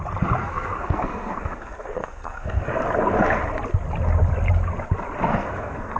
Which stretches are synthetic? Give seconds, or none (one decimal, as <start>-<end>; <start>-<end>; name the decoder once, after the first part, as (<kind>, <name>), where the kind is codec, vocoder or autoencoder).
0.4-2.8 (codec, SNAC); 5.3-6.0